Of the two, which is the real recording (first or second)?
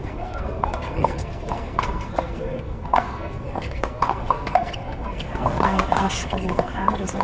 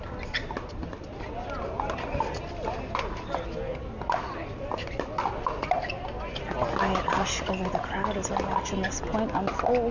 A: second